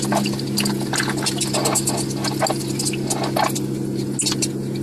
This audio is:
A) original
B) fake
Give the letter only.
A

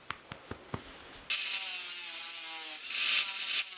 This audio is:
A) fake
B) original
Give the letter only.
B